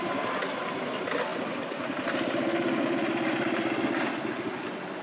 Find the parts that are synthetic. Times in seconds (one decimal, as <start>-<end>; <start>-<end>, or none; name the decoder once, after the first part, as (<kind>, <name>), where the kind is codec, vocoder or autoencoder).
none